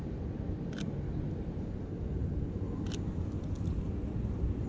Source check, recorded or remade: recorded